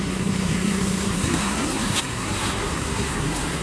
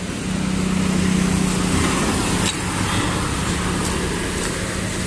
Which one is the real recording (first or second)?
second